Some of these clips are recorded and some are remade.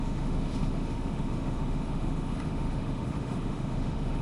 remade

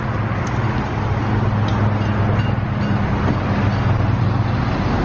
recorded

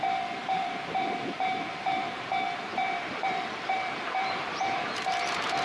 remade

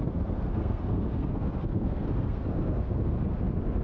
remade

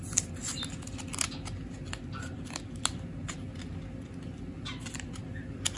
recorded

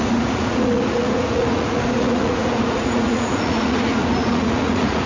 remade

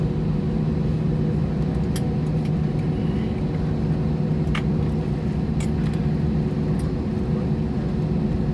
recorded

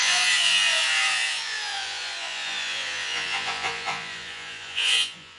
remade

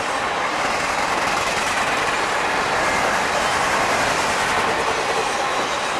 recorded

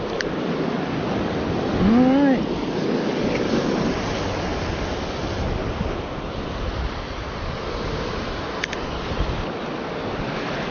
recorded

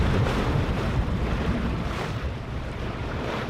remade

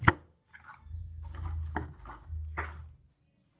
recorded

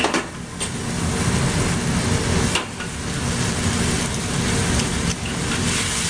recorded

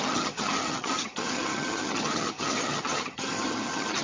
remade